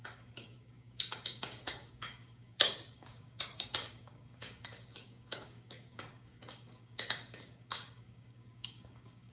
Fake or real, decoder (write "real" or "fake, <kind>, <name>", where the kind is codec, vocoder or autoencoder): fake, codec, DAC